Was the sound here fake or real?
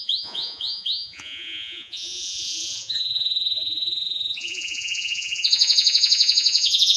fake